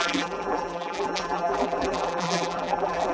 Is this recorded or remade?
remade